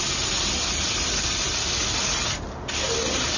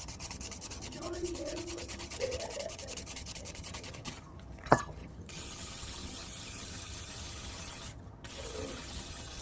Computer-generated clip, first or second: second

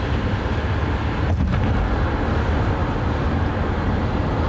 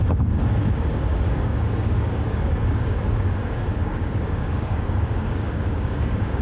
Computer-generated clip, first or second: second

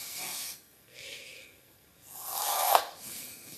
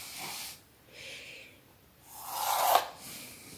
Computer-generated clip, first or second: first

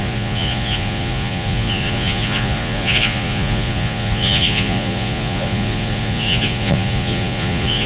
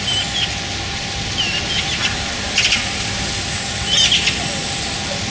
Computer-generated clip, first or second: first